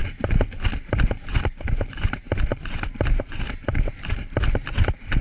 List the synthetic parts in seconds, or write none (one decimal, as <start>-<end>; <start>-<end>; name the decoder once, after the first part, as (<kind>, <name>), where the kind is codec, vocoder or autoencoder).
none

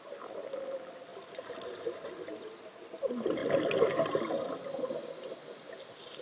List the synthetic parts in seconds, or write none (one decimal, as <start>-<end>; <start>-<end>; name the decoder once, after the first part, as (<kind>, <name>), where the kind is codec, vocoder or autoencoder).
none

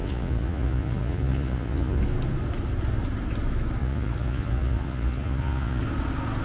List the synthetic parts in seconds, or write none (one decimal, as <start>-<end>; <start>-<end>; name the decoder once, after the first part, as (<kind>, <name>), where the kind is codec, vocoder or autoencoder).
0.0-2.0 (vocoder, Vocos); 3.8-5.8

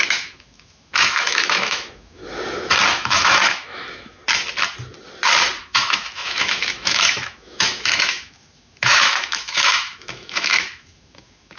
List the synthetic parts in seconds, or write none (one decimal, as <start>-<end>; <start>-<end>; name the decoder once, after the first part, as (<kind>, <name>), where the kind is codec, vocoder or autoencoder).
0.0-2.2 (autoencoder, DAC-VAE); 2.9-4.2; 5.6-11.6

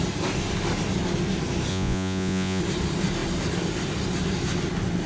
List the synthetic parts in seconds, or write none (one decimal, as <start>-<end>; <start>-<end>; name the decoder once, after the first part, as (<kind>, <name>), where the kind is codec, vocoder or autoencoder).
1.7-2.6 (vocoder, Vocos)

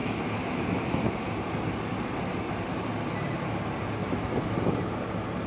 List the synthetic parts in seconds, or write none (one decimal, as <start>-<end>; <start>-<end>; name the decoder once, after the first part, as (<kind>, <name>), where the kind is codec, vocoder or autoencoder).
0.0-1.4 (autoencoder, DAC-VAE); 4.0-4.7